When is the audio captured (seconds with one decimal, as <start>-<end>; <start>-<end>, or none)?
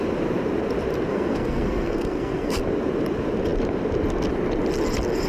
0.0-1.1; 2.6-5.3